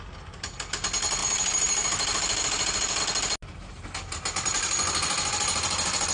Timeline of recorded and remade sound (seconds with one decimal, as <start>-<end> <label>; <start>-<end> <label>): 0.0-1.2 recorded; 1.2-3.0 remade; 3.0-6.1 recorded